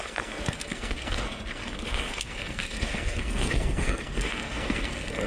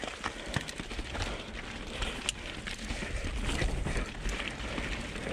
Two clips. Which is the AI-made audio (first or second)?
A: first